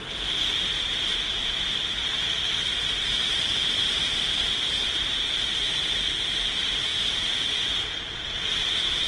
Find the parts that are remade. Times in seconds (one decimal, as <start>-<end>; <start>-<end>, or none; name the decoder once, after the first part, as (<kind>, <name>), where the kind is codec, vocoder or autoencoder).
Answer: 0.7-1.7 (vocoder, BigVGAN v2); 3.2-5.7; 6.9-7.7